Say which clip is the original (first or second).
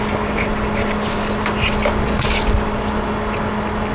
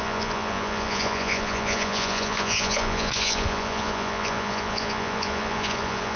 first